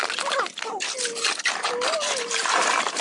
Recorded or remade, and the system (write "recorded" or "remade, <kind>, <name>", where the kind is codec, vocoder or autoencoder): recorded